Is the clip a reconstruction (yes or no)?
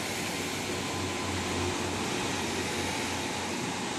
no